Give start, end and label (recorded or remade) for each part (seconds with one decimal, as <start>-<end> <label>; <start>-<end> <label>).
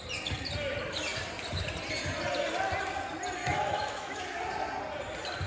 0.0-3.4 recorded; 3.4-4.2 remade; 4.2-5.5 recorded